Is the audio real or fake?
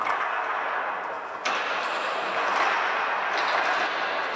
real